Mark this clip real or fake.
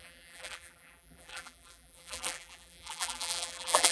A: fake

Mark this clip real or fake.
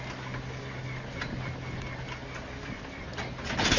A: real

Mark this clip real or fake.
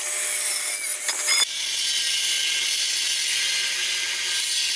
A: real